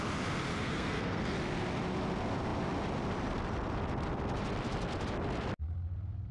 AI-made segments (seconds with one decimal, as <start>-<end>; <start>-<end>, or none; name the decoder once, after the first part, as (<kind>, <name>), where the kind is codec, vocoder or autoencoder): 0.5-1.2 (codec, SNAC)